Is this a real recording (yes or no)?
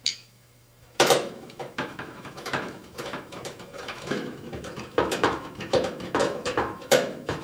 no